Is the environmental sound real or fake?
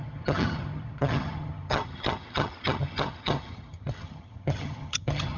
fake